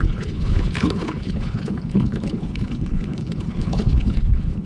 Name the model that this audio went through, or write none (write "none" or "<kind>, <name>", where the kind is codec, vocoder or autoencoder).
codec, HILCodec